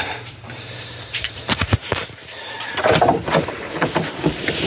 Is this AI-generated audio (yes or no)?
yes